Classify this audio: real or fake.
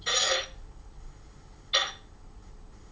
real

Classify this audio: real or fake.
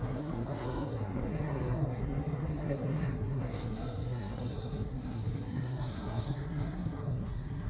fake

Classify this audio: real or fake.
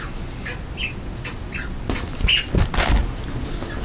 real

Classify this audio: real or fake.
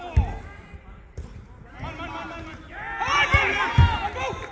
real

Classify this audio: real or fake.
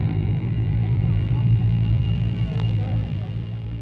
fake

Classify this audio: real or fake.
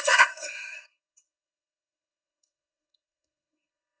fake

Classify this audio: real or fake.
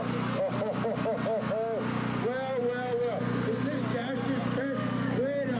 real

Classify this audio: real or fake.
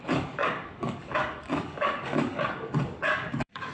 fake